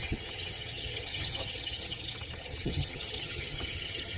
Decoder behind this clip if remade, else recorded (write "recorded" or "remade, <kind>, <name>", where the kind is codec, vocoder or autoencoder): remade, vocoder, HiFi-GAN